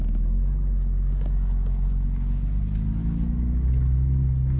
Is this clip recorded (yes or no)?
yes